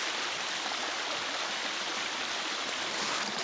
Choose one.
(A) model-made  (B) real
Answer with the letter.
B